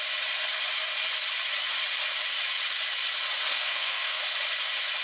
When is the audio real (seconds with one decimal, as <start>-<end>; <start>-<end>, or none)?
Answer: 0.0-3.5; 4.2-5.0